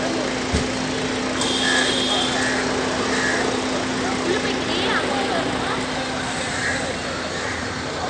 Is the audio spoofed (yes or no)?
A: no